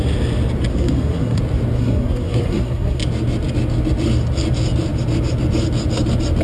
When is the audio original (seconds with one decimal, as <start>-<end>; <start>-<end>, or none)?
0.0-0.7; 1.4-1.8; 3.0-6.4